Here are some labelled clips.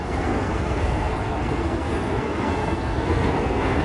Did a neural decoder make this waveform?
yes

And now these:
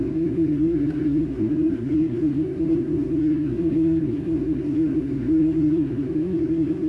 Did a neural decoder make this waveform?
yes